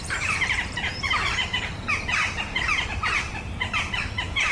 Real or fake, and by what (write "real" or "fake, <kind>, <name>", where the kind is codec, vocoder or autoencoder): fake, vocoder, BigVGAN v2